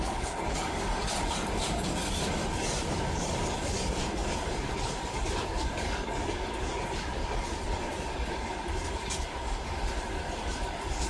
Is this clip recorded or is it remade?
remade